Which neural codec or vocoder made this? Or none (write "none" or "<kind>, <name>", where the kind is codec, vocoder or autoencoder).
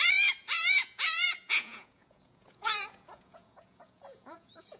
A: vocoder, Vocos